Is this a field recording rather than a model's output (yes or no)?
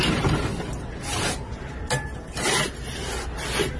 yes